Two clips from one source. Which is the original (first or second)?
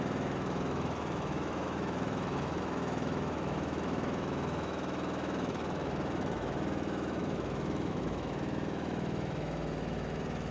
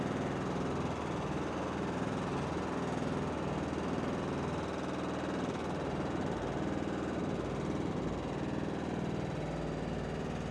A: second